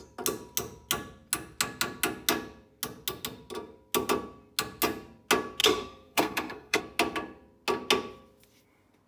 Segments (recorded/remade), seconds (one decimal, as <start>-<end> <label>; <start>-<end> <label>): 0.0-5.6 recorded; 5.6-6.8 remade; 6.8-9.1 recorded